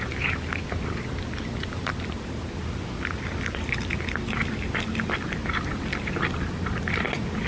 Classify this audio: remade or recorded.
recorded